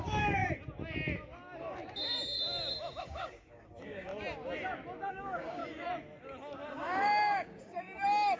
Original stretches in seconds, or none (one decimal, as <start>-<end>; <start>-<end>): 0.4-3.0; 4.1-5.1; 5.6-6.2